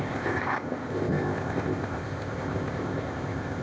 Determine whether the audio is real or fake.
fake